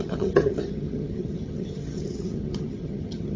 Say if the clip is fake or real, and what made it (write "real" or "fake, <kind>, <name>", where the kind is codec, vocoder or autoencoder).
fake, vocoder, HiFi-GAN